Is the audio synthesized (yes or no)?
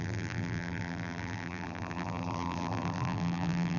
yes